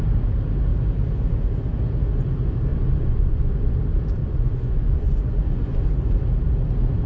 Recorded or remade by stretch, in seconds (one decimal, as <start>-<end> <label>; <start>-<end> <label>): 0.0-2.7 recorded; 2.7-3.8 remade; 3.8-4.2 recorded; 4.2-5.8 remade; 5.8-7.1 recorded